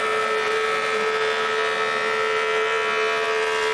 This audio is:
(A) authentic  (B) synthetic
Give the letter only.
A